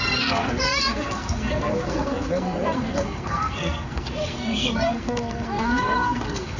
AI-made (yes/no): yes